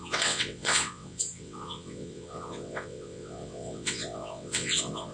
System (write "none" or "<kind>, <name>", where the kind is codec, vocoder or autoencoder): vocoder, WaveNeXt